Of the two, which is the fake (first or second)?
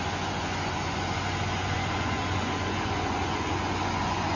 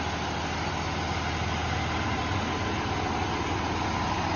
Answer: first